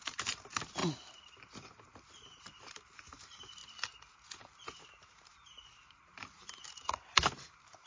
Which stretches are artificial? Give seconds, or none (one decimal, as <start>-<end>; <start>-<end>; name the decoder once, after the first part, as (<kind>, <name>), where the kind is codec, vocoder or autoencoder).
0.0-0.8 (vocoder, BigVGAN v2); 2.4-3.6; 4.7-7.9